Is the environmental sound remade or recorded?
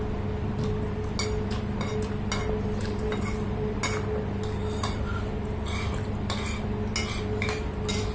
recorded